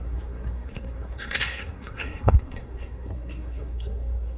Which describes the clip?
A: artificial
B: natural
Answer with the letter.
A